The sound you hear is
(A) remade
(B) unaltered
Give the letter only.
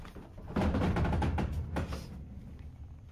B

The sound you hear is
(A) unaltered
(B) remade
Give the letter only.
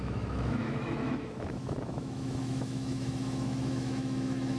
B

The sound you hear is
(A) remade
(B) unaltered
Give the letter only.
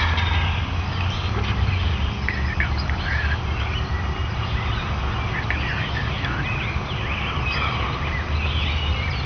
B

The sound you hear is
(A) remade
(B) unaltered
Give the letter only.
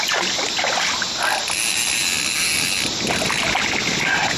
B